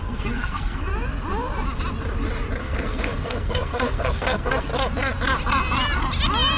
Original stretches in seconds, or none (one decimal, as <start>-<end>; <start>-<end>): 0.9-2.6; 4.7-6.6

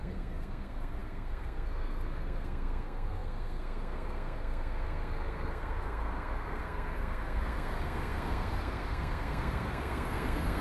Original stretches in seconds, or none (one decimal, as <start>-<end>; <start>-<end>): none

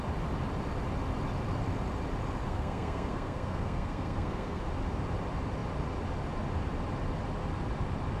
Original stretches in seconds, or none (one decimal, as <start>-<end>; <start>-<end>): 0.0-2.4; 4.6-8.2

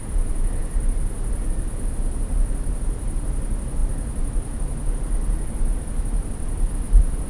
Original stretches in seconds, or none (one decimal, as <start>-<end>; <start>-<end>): 0.0-7.3

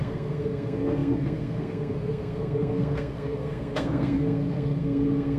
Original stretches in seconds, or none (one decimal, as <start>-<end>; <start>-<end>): none

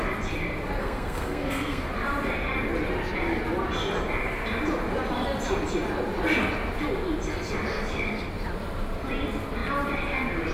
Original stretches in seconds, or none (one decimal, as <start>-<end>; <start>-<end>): 0.0-0.8; 1.9-7.7; 8.3-10.5

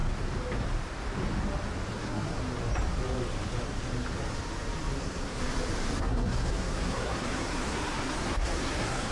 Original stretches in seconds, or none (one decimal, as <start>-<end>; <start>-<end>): 0.0-1.9; 2.4-5.0; 5.4-6.0

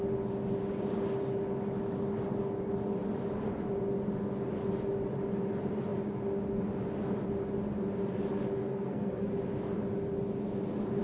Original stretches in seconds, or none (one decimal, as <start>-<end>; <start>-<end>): 0.0-8.6; 9.3-11.0